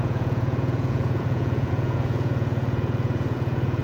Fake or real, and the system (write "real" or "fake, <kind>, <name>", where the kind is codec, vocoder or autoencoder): fake, vocoder, Vocos